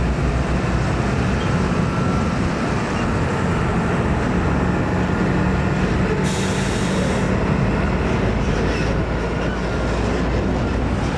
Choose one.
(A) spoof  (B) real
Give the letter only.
B